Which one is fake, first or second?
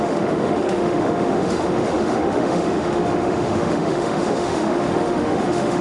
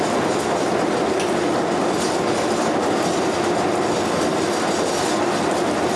first